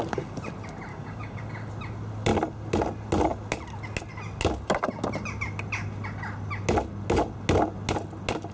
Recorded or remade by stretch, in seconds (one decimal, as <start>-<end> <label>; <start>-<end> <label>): 0.0-0.9 recorded; 0.9-1.4 remade; 1.4-8.5 recorded